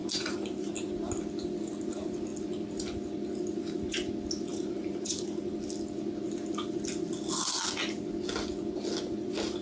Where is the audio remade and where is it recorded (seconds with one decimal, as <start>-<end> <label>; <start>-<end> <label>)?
0.0-0.7 remade; 0.7-4.5 recorded; 4.5-5.5 remade; 5.5-9.6 recorded